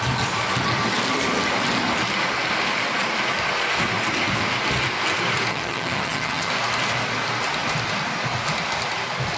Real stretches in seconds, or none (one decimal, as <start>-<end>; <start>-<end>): 0.0-5.5; 6.5-9.4